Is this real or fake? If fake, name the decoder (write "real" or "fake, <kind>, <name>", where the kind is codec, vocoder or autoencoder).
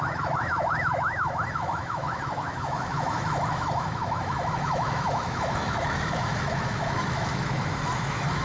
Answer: fake, autoencoder, DAC-VAE